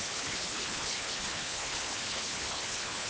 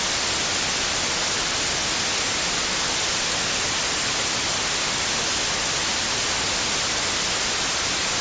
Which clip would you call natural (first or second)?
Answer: second